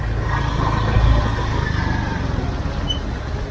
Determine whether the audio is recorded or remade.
recorded